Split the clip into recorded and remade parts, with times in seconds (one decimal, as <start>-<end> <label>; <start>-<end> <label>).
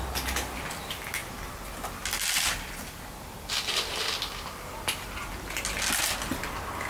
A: 0.0-6.9 recorded